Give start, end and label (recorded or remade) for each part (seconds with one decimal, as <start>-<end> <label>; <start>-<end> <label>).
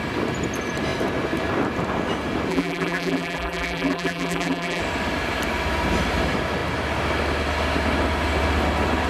0.0-2.5 recorded; 2.5-4.8 remade; 4.8-9.1 recorded